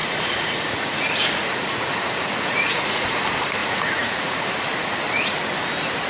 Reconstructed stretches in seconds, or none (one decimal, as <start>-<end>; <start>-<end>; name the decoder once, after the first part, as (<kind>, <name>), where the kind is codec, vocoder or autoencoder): 0.0-3.2 (vocoder, Vocos); 3.6-4.4